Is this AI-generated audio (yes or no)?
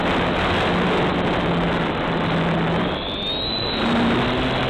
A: no